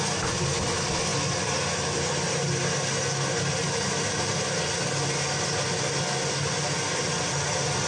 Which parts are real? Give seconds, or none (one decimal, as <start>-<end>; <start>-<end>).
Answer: 0.0-7.9